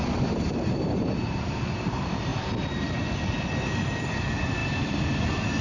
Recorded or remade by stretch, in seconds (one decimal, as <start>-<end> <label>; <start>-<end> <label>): 0.0-2.3 remade; 2.3-3.6 recorded; 3.6-5.6 remade